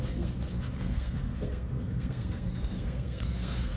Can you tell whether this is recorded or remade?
remade